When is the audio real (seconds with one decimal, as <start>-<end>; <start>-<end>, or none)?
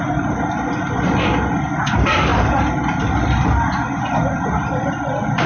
0.0-5.5